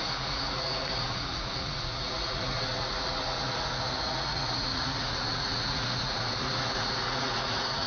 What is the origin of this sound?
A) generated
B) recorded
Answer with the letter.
A